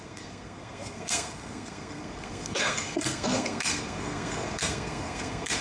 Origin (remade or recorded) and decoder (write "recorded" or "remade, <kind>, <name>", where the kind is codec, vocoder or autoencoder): remade, codec, SNAC